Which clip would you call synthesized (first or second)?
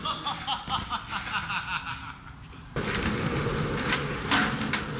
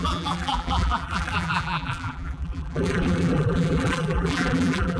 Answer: second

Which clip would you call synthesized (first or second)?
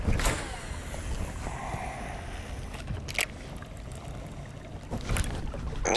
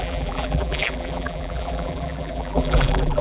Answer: second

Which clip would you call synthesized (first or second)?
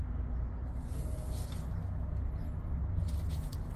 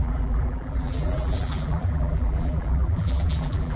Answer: second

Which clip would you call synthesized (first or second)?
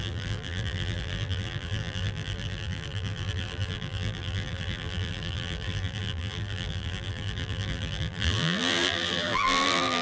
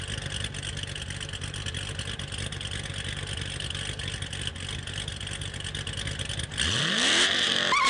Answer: first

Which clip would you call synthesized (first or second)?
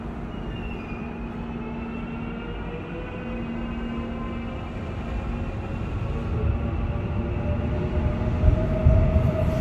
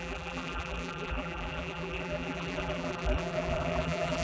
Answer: second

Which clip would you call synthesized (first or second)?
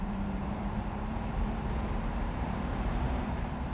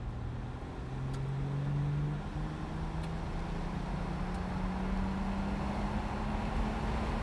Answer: first